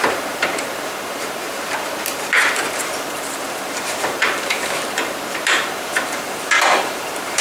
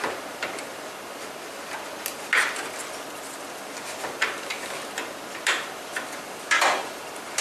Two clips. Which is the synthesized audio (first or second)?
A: first